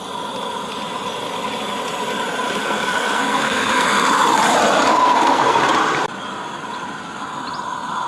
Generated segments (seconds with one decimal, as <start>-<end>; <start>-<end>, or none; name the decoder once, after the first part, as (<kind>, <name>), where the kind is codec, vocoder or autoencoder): 2.6-4.2 (codec, SNAC); 4.9-5.6